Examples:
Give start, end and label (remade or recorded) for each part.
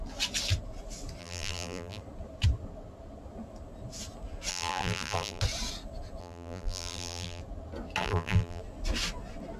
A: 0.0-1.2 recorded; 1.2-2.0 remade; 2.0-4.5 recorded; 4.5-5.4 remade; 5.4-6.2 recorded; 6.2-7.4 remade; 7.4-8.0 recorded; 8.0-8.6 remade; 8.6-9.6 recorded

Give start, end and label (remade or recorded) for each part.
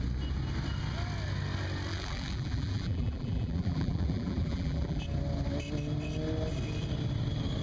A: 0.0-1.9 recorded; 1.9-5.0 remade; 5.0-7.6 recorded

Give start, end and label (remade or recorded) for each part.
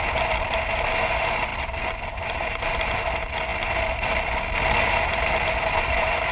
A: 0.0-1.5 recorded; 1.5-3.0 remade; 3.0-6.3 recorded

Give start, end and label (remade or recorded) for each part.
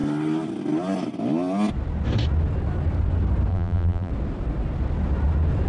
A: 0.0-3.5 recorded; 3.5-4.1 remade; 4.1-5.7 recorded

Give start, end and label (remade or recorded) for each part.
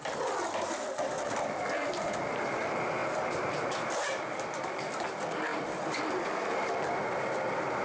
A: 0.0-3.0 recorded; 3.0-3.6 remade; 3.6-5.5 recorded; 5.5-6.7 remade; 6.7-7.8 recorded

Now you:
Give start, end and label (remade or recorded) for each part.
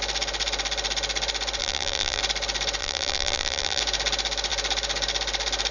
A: 0.0-1.6 recorded; 1.6-2.2 remade; 2.2-2.8 recorded; 2.8-3.8 remade; 3.8-5.7 recorded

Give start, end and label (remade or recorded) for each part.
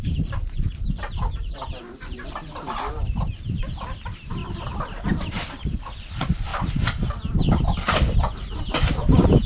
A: 0.0-6.5 remade; 6.5-7.3 recorded; 7.3-9.5 remade